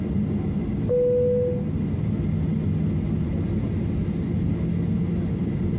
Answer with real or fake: real